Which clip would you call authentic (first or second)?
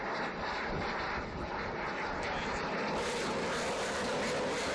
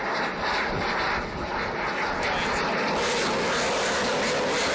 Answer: second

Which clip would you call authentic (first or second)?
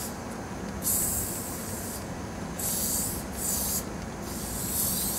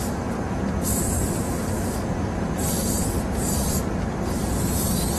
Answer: first